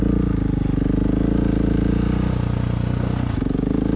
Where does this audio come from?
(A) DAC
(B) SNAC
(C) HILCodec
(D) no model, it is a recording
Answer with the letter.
D